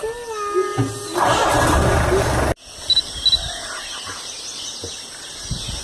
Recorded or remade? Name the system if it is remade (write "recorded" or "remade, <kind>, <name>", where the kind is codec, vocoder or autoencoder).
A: recorded